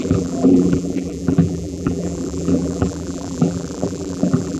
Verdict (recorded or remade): remade